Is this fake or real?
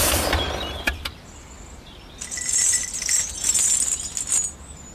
real